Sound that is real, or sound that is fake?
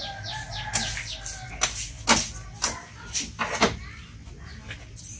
real